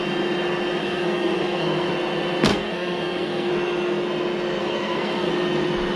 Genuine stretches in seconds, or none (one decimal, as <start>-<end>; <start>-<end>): 0.0-0.8; 1.9-2.5; 3.5-4.6; 5.3-6.0